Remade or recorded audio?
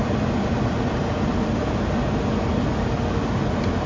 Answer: recorded